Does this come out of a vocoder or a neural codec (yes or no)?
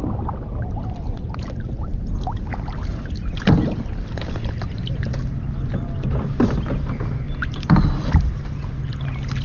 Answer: no